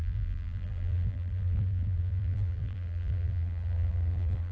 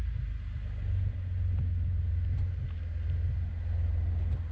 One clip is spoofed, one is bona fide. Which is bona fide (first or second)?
second